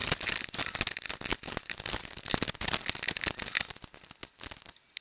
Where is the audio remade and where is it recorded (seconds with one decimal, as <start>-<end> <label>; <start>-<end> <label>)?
0.0-5.0 recorded